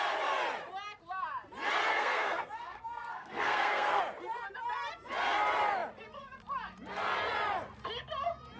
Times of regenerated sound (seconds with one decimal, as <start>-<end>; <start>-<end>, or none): 1.9-4.0